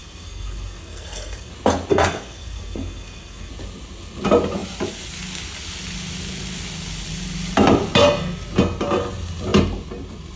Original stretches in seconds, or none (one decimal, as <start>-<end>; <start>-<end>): 1.5-1.9; 3.5-10.4